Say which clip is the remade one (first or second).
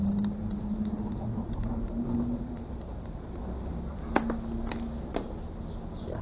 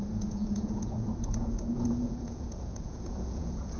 second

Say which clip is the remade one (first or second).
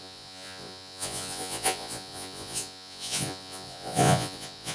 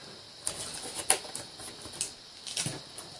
first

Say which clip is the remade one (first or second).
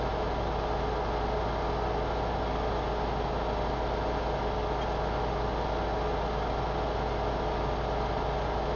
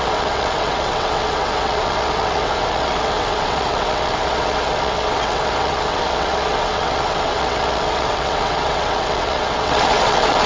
second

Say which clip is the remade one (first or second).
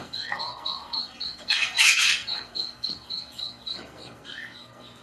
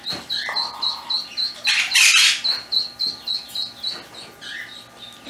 first